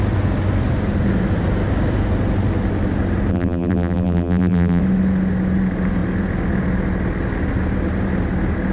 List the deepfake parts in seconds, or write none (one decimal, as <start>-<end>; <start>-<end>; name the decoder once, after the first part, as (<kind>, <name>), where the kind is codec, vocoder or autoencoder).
3.3-4.8 (vocoder, BigVGAN v2)

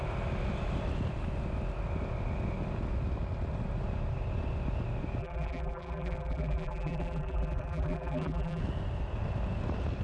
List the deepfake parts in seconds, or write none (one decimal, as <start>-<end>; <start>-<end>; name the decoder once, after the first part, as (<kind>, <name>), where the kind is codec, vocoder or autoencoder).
5.2-8.6 (vocoder, BigVGAN v2)

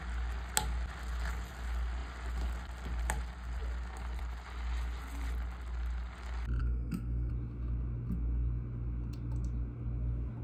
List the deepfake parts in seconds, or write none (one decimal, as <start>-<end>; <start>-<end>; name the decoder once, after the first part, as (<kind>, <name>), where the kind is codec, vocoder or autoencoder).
6.6-7.3 (codec, SNAC)

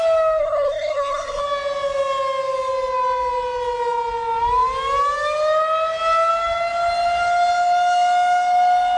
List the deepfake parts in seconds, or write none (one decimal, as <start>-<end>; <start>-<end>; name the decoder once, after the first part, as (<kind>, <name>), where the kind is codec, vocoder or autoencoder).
0.4-1.4 (codec, SNAC)

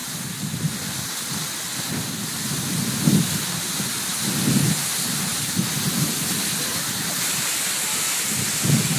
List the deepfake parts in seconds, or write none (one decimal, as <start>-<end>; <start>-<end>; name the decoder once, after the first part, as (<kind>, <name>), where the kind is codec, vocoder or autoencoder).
none

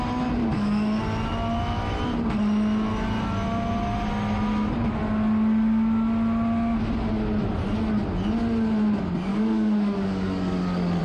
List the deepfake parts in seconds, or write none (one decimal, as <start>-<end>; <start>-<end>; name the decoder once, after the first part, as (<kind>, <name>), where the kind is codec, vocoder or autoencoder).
0.4-1.0 (codec, DAC); 9.3-11.0